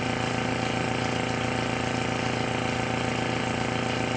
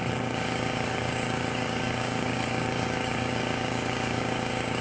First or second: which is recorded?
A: first